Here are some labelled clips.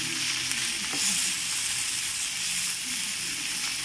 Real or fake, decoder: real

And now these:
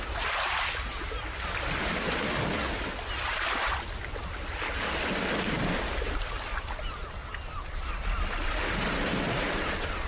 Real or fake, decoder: real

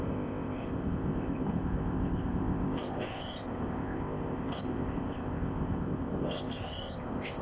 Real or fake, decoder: fake, codec, ZipCodec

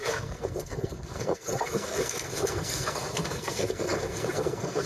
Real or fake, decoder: fake, codec, SNAC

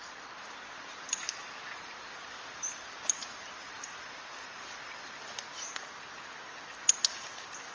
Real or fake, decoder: real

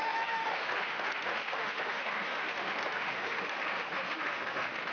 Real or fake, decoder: fake, autoencoder, DAC-VAE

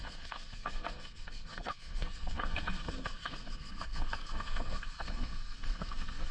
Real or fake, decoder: fake, codec, SNAC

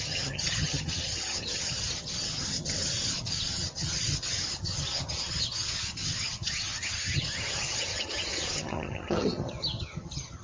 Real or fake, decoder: fake, vocoder, HiFi-GAN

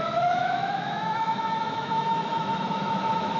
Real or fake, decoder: fake, autoencoder, DAC-VAE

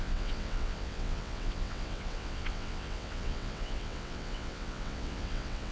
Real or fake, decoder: fake, vocoder, WaveNeXt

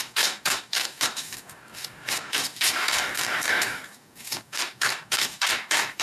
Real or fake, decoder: fake, codec, DAC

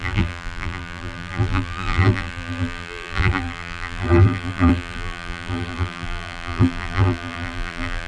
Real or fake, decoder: fake, vocoder, BigVGAN v2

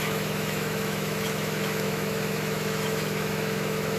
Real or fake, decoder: fake, autoencoder, DAC-VAE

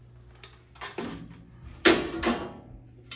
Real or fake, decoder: real